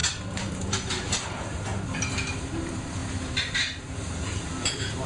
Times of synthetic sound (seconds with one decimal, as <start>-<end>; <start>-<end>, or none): 0.0-1.7; 2.3-5.1